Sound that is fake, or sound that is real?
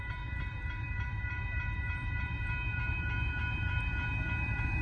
fake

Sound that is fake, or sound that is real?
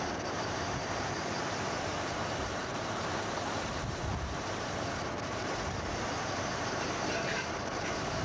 fake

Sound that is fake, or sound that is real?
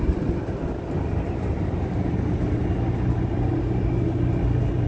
real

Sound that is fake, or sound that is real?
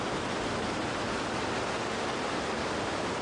real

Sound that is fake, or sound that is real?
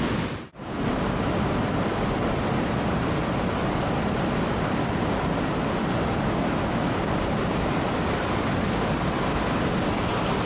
real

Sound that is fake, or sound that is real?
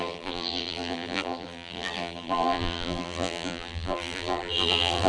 fake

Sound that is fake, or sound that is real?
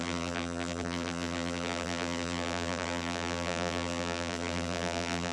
fake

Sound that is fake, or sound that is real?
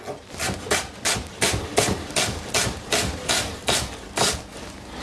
real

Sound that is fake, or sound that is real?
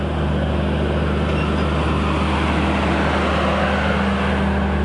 real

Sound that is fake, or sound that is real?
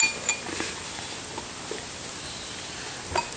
real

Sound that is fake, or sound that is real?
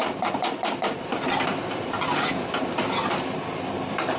fake